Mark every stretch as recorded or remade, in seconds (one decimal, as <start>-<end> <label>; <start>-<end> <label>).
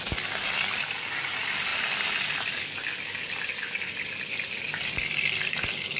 0.0-6.0 recorded